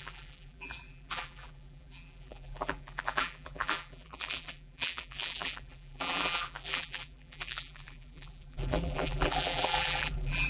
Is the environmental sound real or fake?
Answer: fake